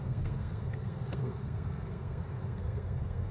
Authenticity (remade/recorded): remade